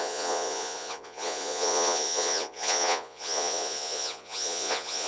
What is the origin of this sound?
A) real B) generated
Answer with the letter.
B